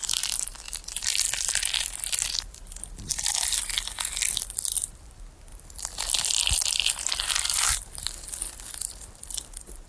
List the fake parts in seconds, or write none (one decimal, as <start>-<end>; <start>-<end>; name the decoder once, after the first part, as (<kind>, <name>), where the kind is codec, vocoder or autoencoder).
none